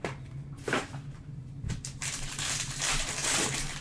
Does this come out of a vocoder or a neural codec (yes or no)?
yes